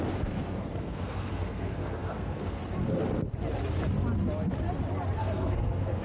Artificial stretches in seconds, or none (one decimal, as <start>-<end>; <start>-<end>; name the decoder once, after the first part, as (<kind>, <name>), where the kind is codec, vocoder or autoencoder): 0.0-2.6 (codec, SNAC); 5.2-6.0